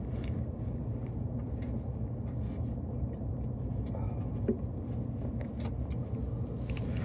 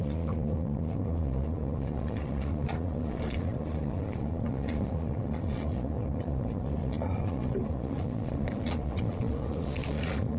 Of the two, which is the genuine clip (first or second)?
first